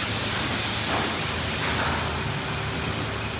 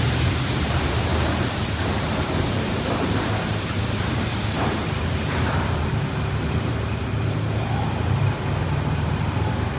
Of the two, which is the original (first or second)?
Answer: first